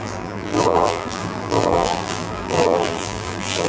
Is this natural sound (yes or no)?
no